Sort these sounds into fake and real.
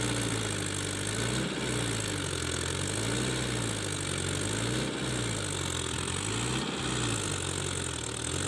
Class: real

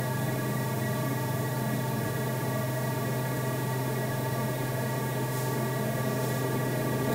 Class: fake